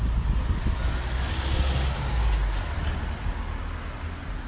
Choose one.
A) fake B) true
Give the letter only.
B